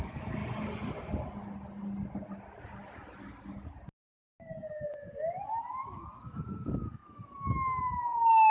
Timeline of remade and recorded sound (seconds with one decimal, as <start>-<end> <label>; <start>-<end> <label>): 0.0-0.4 remade; 0.4-5.4 recorded; 5.4-8.5 remade